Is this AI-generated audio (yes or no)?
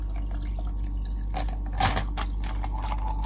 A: no